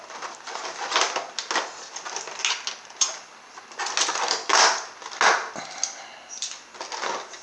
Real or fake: real